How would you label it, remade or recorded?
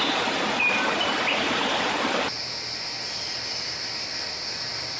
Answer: recorded